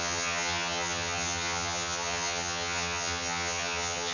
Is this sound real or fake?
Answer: fake